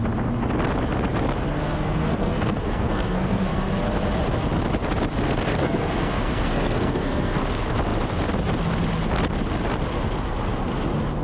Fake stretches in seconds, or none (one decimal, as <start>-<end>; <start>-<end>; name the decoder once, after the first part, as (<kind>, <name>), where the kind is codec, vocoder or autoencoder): 1.6-3.8 (codec, SNAC); 5.6-7.4